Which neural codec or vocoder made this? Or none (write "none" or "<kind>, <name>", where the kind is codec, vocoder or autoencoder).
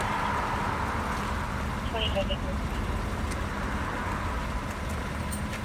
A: none